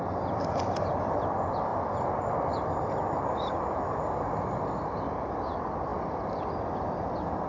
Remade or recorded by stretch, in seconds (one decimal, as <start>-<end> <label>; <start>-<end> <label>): 0.0-7.5 recorded